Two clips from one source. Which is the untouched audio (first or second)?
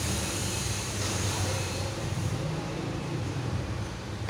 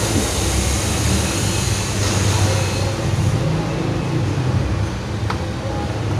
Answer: second